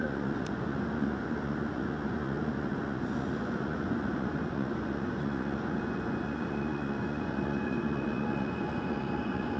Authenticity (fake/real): fake